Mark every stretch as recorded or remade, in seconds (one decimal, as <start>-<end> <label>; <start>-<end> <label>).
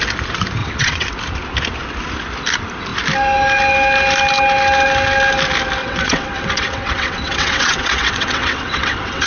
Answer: 0.0-0.6 recorded; 0.6-1.1 remade; 1.1-5.8 recorded; 5.8-9.3 remade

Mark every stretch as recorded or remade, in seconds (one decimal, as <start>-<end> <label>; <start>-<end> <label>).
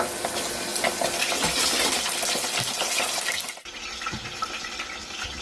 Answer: 0.0-5.4 recorded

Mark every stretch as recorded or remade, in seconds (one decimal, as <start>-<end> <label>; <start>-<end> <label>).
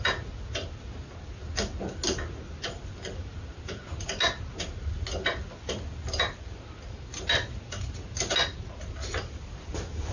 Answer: 0.0-10.1 recorded